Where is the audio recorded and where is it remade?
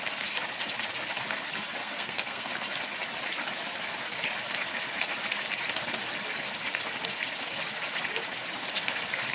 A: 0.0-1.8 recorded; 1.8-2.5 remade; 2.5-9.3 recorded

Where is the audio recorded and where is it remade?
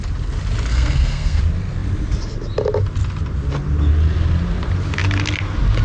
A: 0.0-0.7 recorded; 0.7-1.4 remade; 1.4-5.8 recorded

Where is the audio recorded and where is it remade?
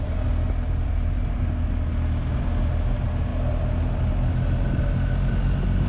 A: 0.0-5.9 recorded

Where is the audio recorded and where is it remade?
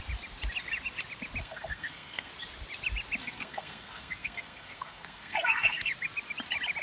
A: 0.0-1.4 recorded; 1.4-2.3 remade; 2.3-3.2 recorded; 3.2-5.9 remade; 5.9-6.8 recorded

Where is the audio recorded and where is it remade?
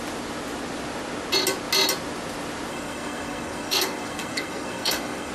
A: 0.0-2.7 recorded; 2.7-5.3 remade